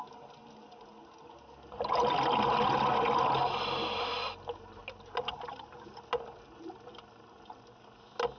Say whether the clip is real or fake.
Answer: real